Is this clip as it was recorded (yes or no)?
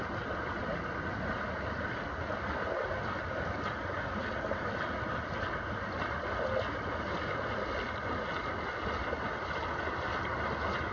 yes